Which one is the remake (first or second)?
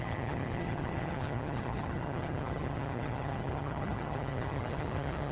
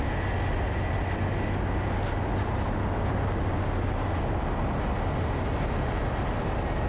first